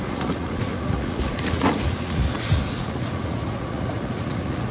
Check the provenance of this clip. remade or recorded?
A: remade